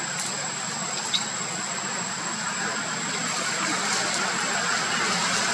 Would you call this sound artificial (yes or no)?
no